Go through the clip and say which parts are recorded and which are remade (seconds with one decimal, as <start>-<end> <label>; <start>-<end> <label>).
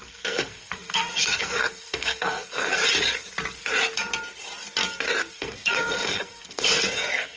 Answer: 0.0-2.8 remade; 2.8-5.3 recorded; 5.3-7.4 remade